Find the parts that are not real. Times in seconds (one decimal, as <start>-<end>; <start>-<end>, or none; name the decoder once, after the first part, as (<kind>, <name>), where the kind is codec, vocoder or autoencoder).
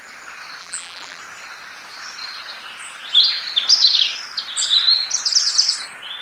0.6-1.2 (vocoder, BigVGAN v2)